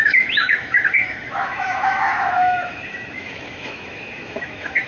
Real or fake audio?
fake